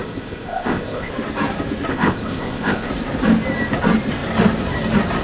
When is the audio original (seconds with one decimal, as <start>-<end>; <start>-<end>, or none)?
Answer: 1.1-1.9; 2.9-5.2